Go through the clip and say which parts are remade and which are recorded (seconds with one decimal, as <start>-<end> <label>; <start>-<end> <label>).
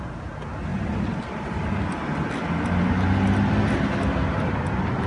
0.0-5.1 recorded